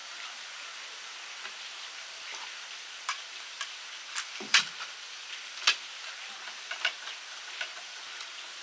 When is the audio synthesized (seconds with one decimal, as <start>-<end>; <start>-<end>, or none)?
none